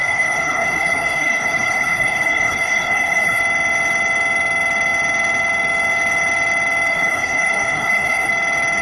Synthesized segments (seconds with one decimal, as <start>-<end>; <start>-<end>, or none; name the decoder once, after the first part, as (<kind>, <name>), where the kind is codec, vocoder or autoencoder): 0.0-3.4 (codec, HILCodec); 6.9-8.3